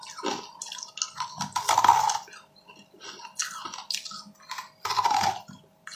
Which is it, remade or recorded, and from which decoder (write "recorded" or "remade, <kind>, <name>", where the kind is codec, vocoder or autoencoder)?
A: recorded